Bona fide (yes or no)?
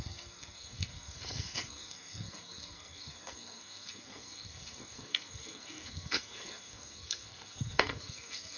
no